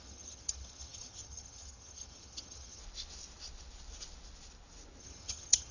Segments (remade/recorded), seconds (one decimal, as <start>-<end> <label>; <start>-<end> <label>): 0.0-2.8 remade; 2.8-5.0 recorded; 5.0-5.7 remade